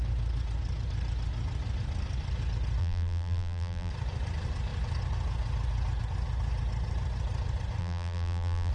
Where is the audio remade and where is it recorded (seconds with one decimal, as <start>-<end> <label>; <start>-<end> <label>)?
0.0-2.8 recorded; 2.8-3.9 remade; 3.9-7.8 recorded; 7.8-8.7 remade